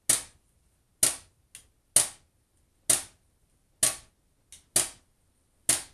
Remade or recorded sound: recorded